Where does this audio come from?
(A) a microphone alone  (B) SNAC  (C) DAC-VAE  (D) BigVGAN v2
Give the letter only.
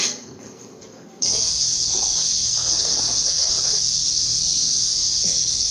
B